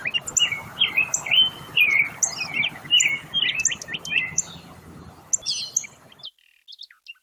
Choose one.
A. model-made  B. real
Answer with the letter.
B